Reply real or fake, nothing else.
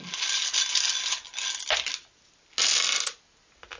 real